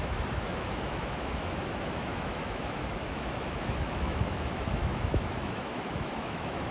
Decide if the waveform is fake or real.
fake